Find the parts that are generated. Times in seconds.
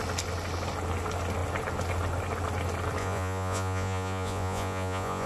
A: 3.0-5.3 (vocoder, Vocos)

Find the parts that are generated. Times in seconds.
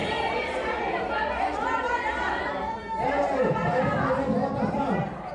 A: 0.0-2.8 (vocoder, BigVGAN v2); 3.6-5.3